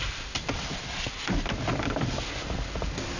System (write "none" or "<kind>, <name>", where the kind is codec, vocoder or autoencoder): none